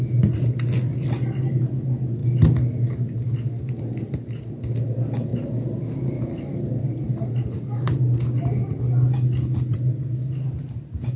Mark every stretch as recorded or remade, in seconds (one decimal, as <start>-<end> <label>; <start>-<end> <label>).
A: 0.0-11.2 recorded